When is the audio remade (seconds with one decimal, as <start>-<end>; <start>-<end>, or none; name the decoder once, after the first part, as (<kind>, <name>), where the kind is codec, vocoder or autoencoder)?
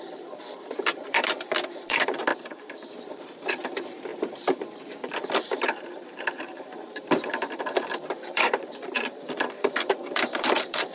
0.0-10.9 (vocoder, BigVGAN v2)